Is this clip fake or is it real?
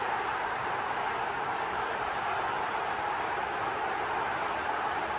real